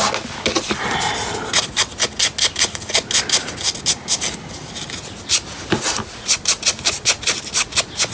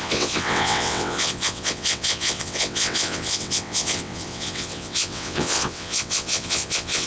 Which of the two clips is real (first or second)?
first